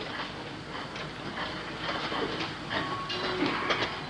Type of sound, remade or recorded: recorded